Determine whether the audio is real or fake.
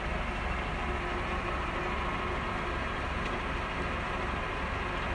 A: real